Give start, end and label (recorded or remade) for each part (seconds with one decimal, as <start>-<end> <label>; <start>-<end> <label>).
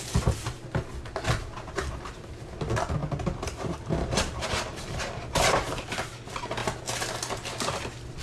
0.0-3.0 recorded; 3.0-5.9 remade; 5.9-8.2 recorded